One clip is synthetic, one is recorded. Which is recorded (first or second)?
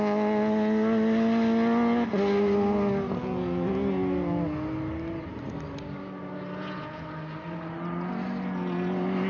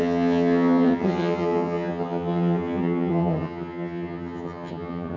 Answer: first